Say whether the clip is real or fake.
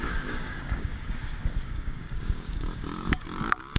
fake